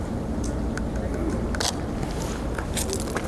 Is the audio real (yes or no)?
yes